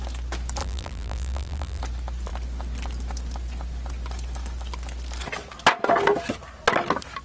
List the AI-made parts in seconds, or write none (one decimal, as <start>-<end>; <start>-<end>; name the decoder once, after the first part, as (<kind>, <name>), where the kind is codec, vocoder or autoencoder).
0.6-1.8 (vocoder, BigVGAN v2)